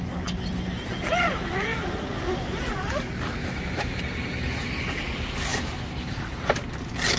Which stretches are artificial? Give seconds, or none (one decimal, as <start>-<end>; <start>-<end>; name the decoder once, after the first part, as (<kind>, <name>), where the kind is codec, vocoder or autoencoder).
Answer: 3.4-4.0 (autoencoder, DAC-VAE); 5.5-6.2